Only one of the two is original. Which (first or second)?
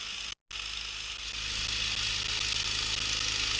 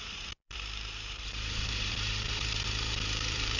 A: first